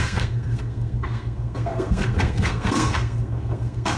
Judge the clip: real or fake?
fake